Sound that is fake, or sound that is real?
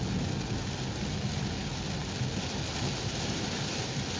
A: real